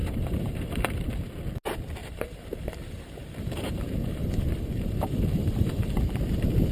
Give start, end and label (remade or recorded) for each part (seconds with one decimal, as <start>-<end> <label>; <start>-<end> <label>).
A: 0.0-1.1 remade; 1.1-2.0 recorded; 2.0-6.0 remade; 6.0-6.7 recorded